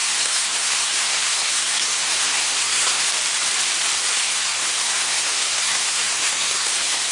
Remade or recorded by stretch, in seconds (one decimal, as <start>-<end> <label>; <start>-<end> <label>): 0.0-3.1 remade; 3.1-4.1 recorded; 4.1-7.1 remade